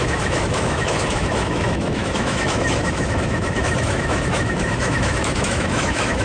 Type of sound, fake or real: fake